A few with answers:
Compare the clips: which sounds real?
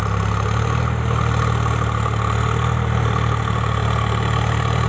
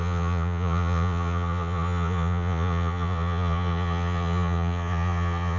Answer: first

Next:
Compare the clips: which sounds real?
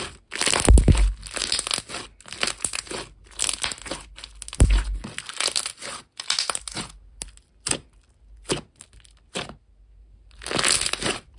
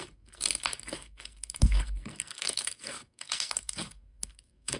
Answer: first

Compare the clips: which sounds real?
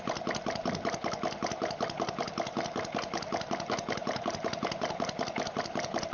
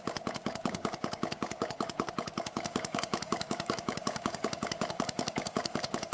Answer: first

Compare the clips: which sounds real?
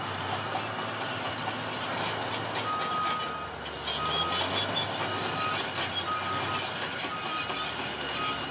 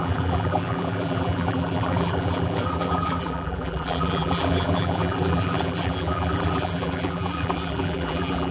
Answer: first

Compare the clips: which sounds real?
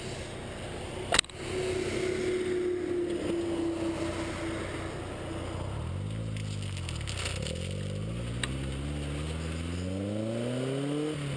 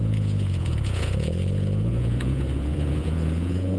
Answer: first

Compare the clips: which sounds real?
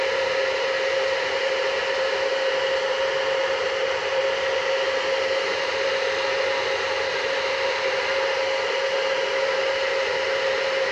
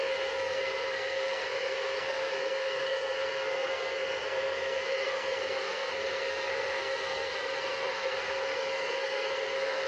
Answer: first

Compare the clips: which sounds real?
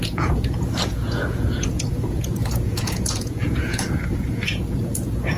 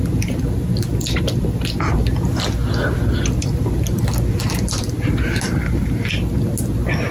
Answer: second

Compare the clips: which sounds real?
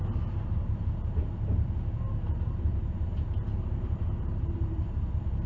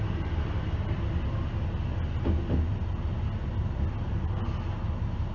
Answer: second